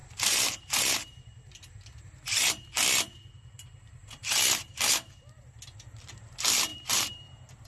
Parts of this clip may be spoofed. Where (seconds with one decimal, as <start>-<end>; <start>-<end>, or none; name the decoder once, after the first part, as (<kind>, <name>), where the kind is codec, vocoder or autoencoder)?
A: 0.0-2.5 (vocoder, BigVGAN v2); 4.0-4.9; 6.7-7.7

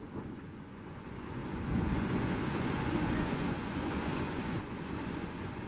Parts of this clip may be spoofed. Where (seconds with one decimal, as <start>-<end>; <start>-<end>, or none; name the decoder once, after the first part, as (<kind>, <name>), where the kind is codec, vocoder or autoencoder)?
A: 0.0-5.7 (vocoder, Vocos)

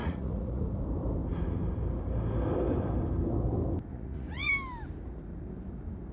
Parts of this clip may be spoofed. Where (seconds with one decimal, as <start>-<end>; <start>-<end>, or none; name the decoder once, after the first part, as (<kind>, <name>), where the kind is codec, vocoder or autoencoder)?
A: 0.0-0.6 (vocoder, Vocos); 3.9-4.5